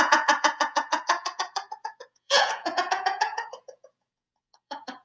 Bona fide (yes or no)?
no